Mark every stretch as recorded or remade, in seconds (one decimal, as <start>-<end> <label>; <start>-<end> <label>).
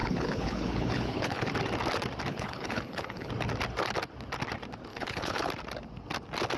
0.0-1.5 remade; 1.5-2.3 recorded; 2.3-3.3 remade; 3.3-4.9 recorded; 4.9-5.5 remade; 5.5-6.6 recorded